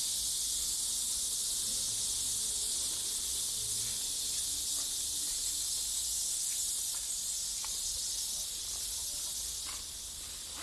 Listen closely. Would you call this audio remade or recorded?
recorded